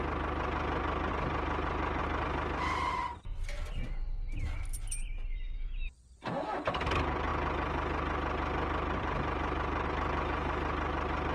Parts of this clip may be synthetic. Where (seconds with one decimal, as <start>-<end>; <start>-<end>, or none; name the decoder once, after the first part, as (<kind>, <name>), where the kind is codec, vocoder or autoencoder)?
none